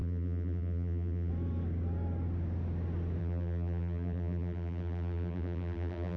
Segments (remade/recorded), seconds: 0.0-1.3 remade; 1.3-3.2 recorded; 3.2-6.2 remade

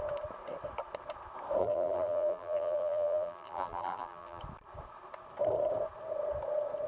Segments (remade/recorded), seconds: 0.0-1.6 recorded; 1.6-4.4 remade; 4.4-6.9 recorded

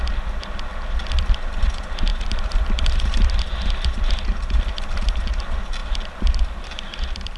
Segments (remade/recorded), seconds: 0.0-2.1 recorded; 2.1-3.4 remade; 3.4-7.4 recorded

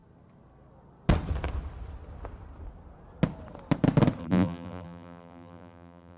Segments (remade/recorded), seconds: 0.0-4.2 recorded; 4.2-6.2 remade

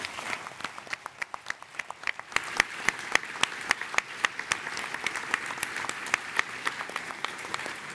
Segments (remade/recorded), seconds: 0.0-0.6 remade; 0.6-2.5 recorded; 2.5-3.2 remade; 3.2-7.1 recorded; 7.1-7.9 remade

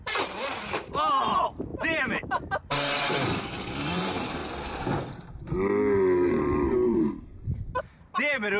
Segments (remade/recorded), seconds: 0.0-0.5 remade; 0.5-1.1 recorded; 1.1-4.4 remade; 4.4-7.8 recorded; 7.8-8.6 remade

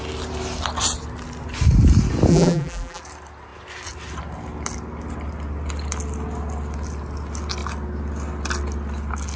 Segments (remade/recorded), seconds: 0.0-2.3 recorded; 2.3-3.0 remade; 3.0-9.4 recorded

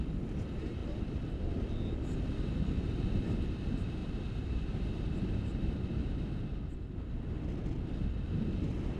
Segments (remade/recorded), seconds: 0.0-4.0 recorded; 4.0-6.4 remade; 6.4-9.0 recorded